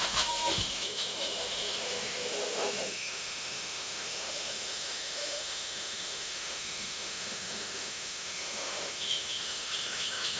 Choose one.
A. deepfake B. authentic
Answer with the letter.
A